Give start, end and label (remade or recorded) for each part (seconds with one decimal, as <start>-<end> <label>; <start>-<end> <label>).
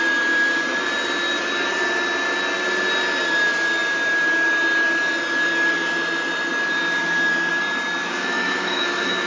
0.0-8.0 recorded; 8.0-9.3 remade